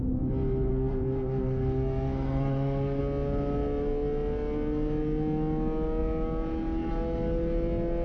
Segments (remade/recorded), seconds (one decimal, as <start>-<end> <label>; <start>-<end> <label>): 0.0-0.7 recorded; 0.7-3.0 remade; 3.0-8.0 recorded